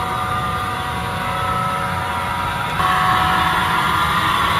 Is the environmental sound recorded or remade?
recorded